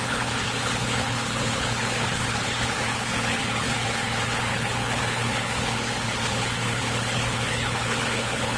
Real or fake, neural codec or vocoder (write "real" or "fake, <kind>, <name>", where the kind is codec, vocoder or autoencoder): fake, codec, HILCodec